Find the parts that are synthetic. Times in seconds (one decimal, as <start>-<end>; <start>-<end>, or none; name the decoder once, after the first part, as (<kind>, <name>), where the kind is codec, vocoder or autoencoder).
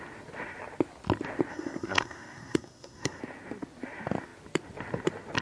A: 1.5-3.2 (codec, SNAC)